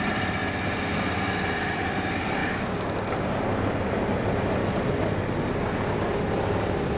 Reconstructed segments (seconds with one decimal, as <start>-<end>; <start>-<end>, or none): 0.0-0.4; 1.3-2.4; 3.6-4.6